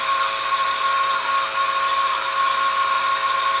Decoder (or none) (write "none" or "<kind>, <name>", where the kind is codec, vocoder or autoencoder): none